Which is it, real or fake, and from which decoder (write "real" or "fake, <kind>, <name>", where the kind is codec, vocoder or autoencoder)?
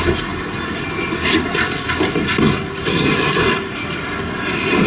real